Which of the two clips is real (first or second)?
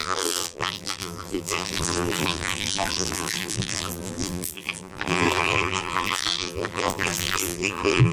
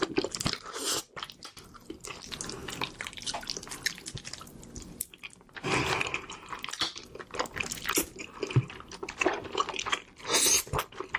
second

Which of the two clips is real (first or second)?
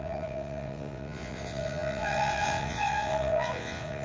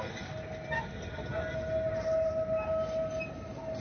second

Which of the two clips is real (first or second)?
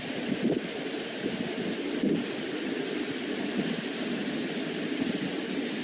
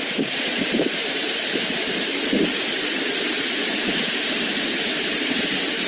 first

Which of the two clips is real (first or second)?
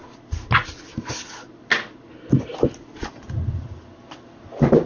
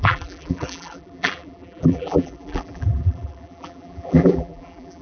first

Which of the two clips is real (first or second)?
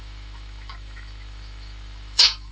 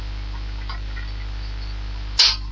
second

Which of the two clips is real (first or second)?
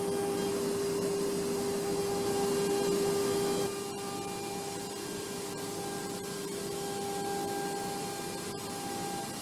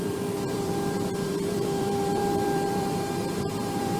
first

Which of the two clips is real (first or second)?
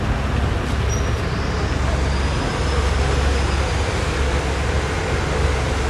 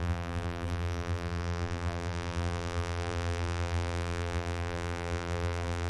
first